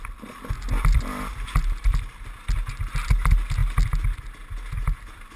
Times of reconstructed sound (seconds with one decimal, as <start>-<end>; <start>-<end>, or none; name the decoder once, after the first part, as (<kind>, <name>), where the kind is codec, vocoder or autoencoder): none